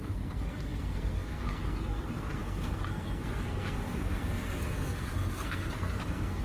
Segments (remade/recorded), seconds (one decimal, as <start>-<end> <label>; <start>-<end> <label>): 0.0-6.4 remade